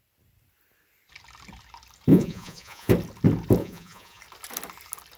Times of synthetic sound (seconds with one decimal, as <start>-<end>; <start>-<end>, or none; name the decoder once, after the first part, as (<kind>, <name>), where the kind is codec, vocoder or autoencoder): 2.1-2.9 (vocoder, Vocos); 3.6-4.2